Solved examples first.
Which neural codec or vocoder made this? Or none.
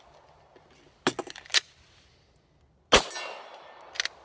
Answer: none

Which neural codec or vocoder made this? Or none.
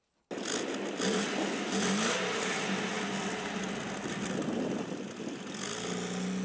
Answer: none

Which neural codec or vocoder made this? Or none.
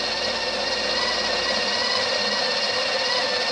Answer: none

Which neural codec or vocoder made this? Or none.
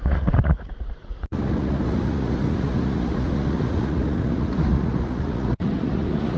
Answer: vocoder, Vocos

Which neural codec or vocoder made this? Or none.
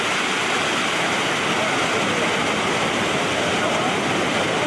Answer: none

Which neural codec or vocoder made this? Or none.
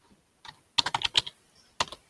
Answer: none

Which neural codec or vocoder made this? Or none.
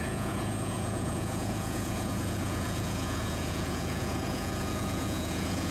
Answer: vocoder, Vocos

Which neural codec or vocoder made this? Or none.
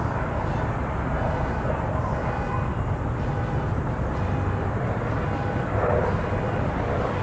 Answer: none